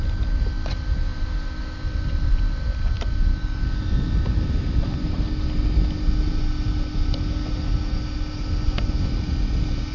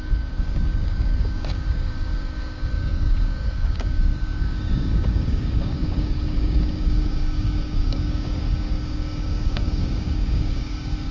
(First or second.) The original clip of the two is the first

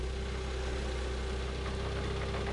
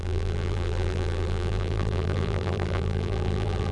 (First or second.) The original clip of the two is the first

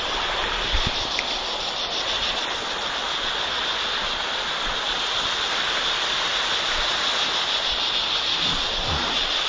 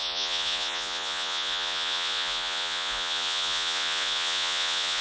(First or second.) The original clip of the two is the first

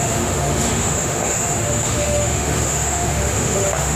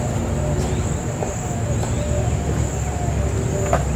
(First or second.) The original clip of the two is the second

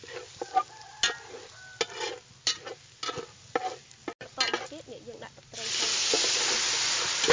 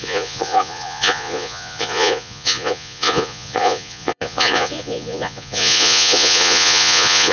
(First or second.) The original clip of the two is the first